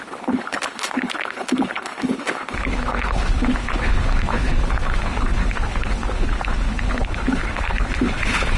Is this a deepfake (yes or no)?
yes